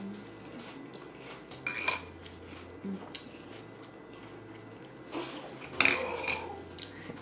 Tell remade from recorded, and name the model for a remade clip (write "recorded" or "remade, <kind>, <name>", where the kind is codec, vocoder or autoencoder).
recorded